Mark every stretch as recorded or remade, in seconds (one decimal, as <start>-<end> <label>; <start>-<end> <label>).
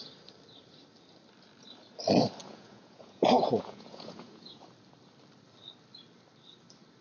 0.0-2.4 recorded; 2.4-4.6 remade; 4.6-7.0 recorded